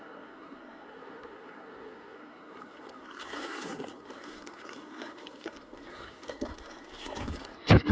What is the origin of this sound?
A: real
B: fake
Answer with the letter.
B